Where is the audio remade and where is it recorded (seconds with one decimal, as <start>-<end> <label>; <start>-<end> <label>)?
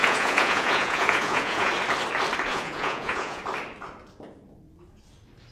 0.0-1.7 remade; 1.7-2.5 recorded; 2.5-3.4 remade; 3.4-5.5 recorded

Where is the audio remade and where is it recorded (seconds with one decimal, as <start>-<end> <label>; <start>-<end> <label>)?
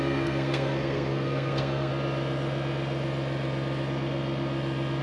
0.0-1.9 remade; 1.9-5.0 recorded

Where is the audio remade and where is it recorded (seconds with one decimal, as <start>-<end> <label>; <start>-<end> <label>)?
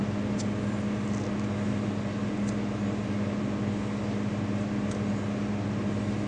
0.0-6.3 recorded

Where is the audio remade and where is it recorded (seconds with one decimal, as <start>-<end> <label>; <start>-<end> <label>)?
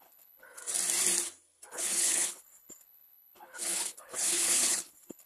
0.0-0.6 remade; 0.6-1.7 recorded; 1.7-5.2 remade